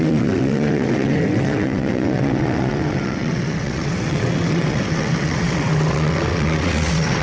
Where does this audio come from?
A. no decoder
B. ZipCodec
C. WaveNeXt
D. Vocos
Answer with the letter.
C